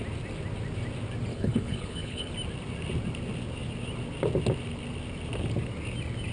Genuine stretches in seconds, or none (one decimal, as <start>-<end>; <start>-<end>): 0.0-1.3; 2.3-6.3